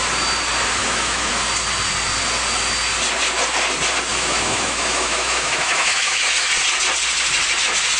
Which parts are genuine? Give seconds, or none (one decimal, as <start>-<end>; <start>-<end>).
0.0-0.8; 1.3-4.1; 6.2-8.0